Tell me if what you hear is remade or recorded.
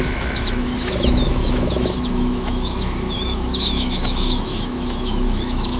remade